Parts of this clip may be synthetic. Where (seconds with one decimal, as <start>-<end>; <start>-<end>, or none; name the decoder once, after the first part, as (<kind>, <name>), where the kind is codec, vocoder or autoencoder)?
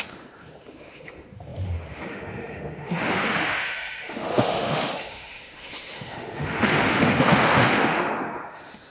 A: 0.0-8.9 (autoencoder, DAC-VAE)